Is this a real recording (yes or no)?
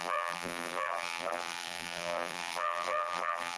no